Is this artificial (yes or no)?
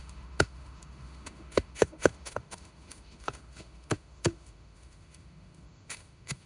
yes